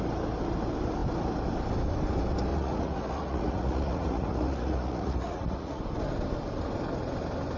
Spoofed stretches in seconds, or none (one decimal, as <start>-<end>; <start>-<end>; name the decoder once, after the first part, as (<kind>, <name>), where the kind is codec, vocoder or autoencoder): 2.5-5.8 (vocoder, Vocos)